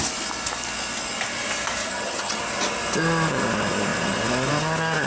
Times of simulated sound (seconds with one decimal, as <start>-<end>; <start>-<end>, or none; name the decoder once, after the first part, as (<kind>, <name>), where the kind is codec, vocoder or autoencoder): 1.8-2.4 (vocoder, HiFi-GAN)